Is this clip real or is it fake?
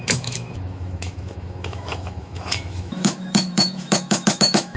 fake